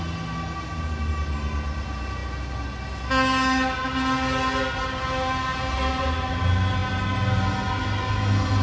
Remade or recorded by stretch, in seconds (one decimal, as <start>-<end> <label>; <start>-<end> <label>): 0.0-8.6 recorded